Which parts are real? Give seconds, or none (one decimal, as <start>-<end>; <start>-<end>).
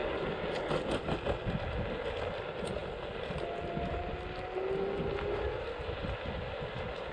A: 0.0-7.1